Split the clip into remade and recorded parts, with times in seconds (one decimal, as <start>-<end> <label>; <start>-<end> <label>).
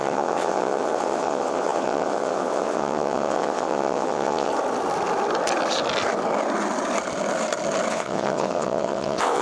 0.0-4.5 remade; 4.5-7.9 recorded; 7.9-9.4 remade